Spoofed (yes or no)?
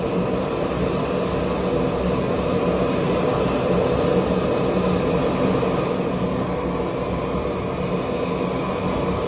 no